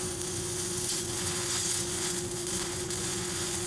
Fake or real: fake